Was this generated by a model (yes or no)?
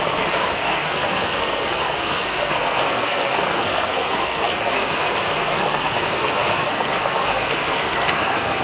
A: yes